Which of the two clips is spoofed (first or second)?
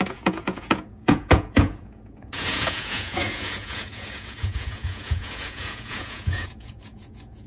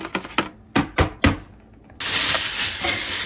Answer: first